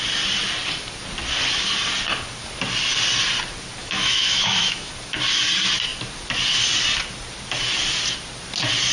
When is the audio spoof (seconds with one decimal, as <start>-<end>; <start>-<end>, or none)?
3.8-4.9